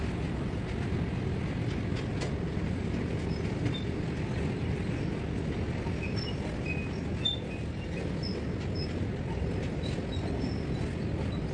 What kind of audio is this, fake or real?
real